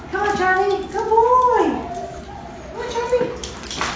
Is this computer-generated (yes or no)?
no